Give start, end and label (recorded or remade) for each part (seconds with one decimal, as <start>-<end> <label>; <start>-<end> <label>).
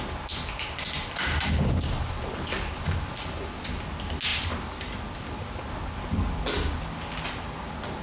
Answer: 0.0-8.0 recorded